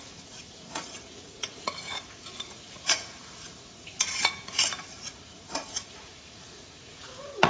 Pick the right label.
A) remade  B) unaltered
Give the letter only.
A